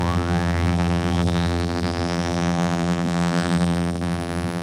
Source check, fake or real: fake